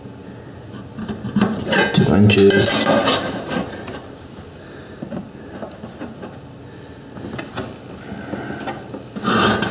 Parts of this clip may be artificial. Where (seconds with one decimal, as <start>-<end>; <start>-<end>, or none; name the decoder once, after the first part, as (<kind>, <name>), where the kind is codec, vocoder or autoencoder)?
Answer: 3.0-5.2 (vocoder, BigVGAN v2)